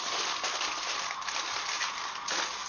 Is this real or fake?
real